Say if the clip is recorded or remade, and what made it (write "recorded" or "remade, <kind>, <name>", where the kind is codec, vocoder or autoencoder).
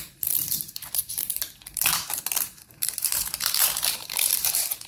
remade, vocoder, BigVGAN v2